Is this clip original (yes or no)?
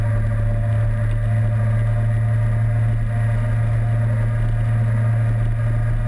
yes